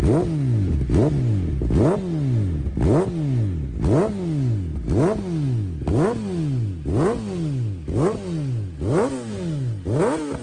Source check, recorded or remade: recorded